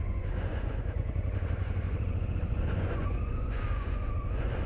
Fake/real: fake